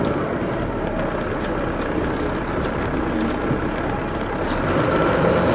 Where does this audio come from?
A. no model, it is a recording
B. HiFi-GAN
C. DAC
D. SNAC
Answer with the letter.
A